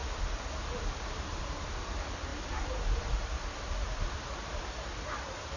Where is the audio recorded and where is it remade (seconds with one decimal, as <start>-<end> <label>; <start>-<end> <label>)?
0.0-1.4 recorded; 1.4-5.6 remade